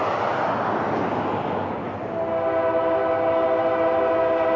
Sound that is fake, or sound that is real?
real